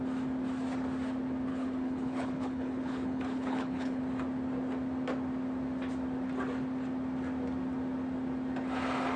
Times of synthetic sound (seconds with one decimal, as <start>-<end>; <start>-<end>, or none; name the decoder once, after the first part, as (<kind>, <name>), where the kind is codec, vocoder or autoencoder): 1.5-4.0 (codec, HILCodec)